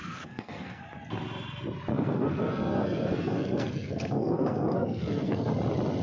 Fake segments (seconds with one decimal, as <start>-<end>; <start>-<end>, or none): 0.0-0.8; 1.9-5.5